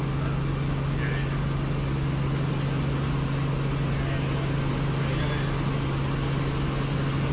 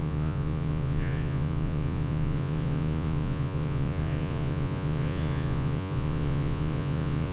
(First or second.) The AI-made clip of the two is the second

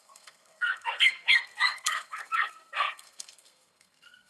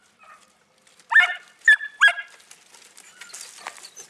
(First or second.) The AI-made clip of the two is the first